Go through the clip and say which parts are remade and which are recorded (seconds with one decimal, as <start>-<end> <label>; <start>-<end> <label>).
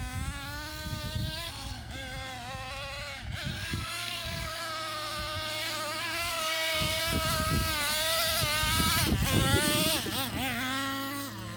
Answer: 0.0-0.7 recorded; 0.7-1.9 remade; 1.9-3.5 recorded; 3.5-4.6 remade; 4.6-6.3 recorded; 6.3-7.0 remade; 7.0-11.6 recorded